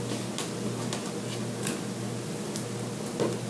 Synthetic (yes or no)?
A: no